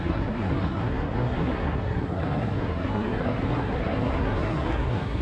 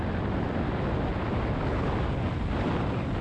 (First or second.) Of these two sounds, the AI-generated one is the first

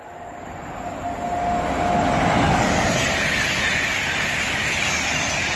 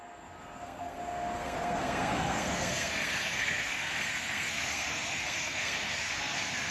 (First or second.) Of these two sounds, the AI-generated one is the second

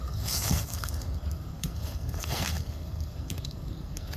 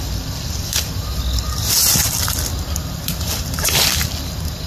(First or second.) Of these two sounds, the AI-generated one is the first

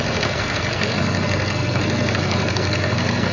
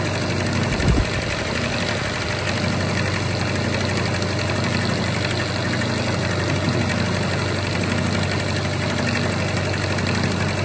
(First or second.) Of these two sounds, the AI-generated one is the first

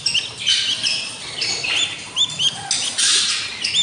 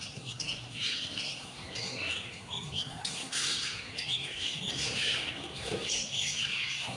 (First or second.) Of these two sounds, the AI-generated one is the second